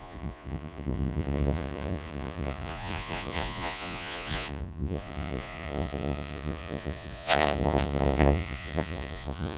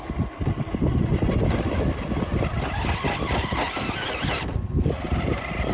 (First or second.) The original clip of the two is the second